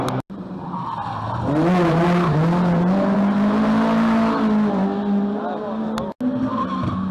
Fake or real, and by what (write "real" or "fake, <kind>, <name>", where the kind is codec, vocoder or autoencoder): real